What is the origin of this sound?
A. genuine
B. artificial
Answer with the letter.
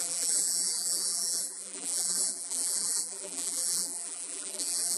B